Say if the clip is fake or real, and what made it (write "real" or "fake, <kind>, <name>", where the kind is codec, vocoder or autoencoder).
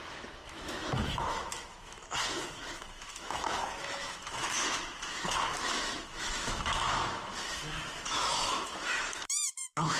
fake, autoencoder, DAC-VAE